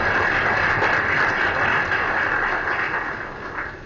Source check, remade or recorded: recorded